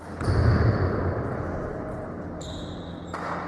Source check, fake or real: real